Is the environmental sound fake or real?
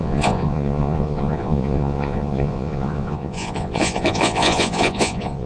fake